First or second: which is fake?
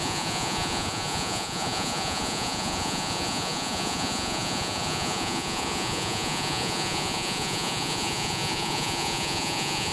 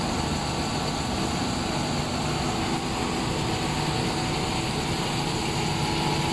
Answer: first